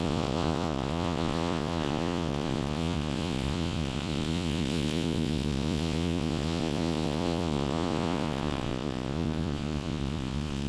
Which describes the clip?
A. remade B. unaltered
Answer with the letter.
A